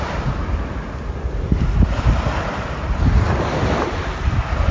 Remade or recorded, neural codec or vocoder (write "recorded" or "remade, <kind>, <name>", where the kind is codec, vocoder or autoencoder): recorded